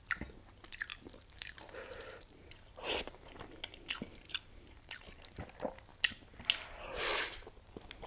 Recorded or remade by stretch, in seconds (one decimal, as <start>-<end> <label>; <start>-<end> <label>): 0.0-0.9 recorded; 0.9-3.3 remade; 3.3-4.1 recorded; 4.1-5.2 remade; 5.2-8.1 recorded